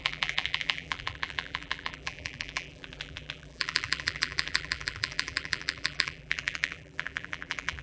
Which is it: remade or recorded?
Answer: remade